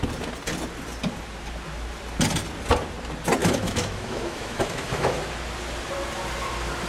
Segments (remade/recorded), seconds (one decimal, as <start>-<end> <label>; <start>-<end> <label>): 0.0-3.4 recorded; 3.4-5.2 remade; 5.2-6.9 recorded